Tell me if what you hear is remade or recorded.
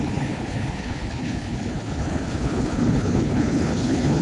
remade